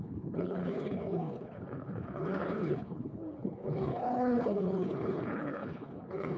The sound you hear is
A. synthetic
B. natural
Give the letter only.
A